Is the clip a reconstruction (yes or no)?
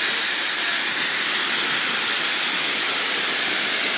no